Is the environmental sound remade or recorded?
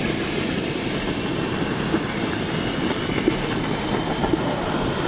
recorded